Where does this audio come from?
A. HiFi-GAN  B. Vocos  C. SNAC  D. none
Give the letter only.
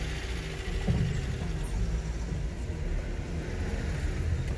D